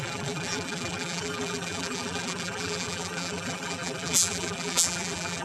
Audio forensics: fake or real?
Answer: fake